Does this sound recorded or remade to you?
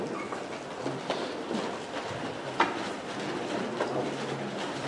recorded